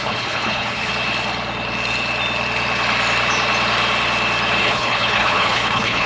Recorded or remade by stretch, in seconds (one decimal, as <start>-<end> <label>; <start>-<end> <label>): 0.0-0.9 remade; 0.9-4.6 recorded; 4.6-6.1 remade